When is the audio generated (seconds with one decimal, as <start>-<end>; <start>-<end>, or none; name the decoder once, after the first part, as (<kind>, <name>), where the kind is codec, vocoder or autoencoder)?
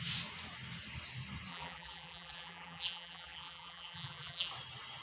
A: 1.5-4.5 (vocoder, BigVGAN v2)